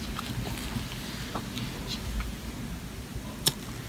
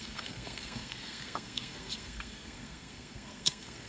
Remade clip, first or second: second